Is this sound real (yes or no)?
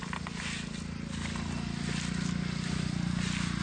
yes